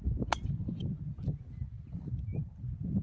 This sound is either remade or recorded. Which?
recorded